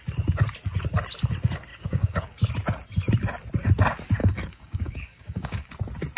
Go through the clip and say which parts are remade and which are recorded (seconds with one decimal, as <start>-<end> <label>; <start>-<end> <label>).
0.0-1.7 recorded; 1.7-2.5 remade; 2.5-4.2 recorded; 4.2-5.7 remade; 5.7-6.2 recorded

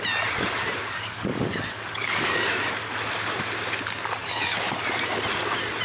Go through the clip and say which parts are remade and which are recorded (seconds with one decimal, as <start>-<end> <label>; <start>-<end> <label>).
0.0-0.8 recorded; 0.8-2.9 remade; 2.9-4.2 recorded; 4.2-4.7 remade; 4.7-5.8 recorded

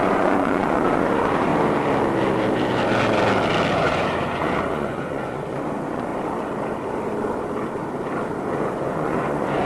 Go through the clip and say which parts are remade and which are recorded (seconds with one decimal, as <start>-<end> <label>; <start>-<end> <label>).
0.0-1.5 remade; 1.5-3.7 recorded; 3.7-6.1 remade; 6.1-8.4 recorded; 8.4-9.7 remade

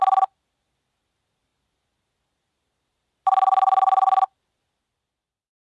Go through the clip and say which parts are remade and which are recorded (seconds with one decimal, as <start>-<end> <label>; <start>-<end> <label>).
0.0-5.6 recorded

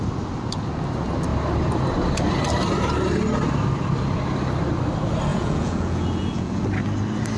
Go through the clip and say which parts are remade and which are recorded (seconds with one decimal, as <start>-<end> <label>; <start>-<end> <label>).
0.0-5.3 recorded; 5.3-6.6 remade; 6.6-7.4 recorded

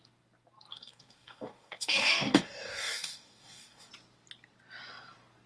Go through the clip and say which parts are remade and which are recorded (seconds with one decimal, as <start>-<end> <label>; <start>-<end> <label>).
0.0-0.7 recorded; 0.7-3.9 remade; 3.9-5.5 recorded